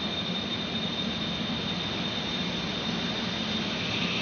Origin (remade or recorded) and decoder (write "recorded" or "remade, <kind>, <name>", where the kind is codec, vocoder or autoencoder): recorded